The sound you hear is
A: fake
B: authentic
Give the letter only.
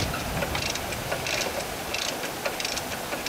B